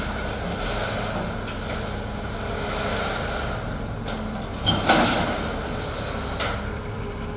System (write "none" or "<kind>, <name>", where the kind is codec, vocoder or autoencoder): none